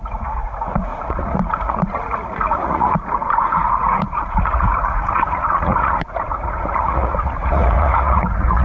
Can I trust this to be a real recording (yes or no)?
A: no